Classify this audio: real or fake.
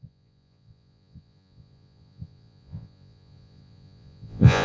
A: fake